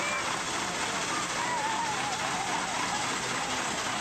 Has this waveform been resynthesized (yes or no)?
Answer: no